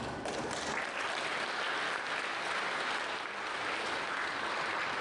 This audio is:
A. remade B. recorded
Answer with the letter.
B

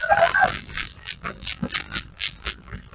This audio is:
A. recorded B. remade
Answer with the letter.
B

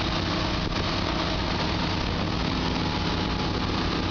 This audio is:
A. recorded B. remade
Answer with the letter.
A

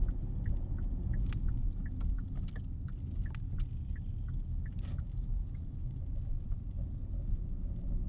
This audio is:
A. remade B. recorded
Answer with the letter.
B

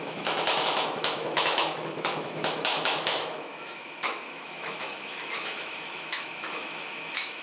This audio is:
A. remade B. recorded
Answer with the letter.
A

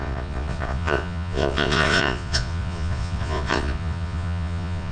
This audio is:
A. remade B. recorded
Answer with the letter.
A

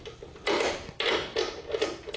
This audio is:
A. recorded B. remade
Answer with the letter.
A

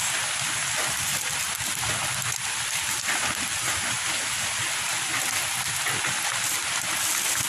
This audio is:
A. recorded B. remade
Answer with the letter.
A